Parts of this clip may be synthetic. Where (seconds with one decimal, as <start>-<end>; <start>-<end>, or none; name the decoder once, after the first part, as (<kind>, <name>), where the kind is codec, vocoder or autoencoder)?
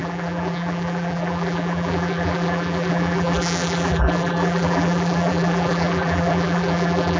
0.0-7.2 (vocoder, BigVGAN v2)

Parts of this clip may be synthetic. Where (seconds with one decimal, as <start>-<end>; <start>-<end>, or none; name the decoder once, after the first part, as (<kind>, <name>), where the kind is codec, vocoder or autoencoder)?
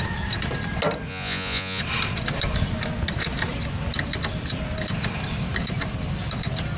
1.1-1.8 (vocoder, Vocos)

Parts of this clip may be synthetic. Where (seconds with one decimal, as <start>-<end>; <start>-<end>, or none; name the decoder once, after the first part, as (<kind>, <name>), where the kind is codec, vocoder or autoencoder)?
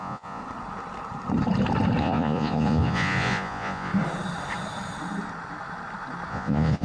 0.0-0.4 (vocoder, Vocos); 2.0-3.9; 6.3-6.8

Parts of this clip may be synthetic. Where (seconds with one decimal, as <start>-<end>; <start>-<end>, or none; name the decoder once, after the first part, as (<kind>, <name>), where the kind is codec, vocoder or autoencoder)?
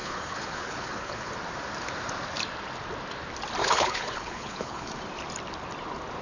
0.0-1.3 (codec, HILCodec); 3.6-4.9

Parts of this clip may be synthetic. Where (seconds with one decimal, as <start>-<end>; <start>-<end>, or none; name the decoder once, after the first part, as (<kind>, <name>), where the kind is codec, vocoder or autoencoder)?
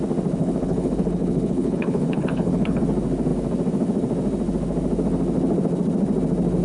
0.4-2.8 (codec, HILCodec)